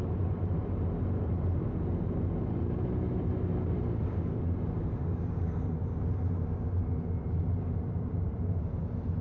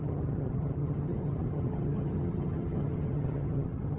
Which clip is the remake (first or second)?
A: second